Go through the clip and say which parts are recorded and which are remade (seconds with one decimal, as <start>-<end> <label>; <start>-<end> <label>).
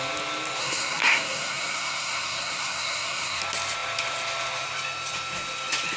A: 0.0-0.6 recorded; 0.6-3.4 remade; 3.4-6.0 recorded